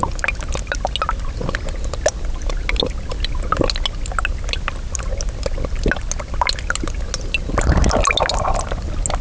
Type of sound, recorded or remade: recorded